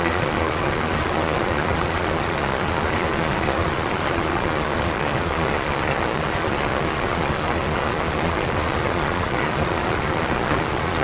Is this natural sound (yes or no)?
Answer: no